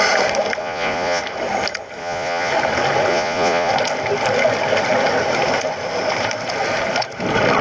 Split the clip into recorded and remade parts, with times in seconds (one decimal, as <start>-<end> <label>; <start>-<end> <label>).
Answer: 0.0-0.6 recorded; 0.6-1.2 remade; 1.2-2.0 recorded; 2.0-2.5 remade; 2.5-3.1 recorded; 3.1-3.7 remade; 3.7-7.6 recorded